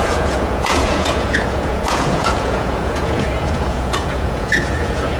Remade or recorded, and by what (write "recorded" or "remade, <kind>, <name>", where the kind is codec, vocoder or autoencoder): remade, vocoder, Vocos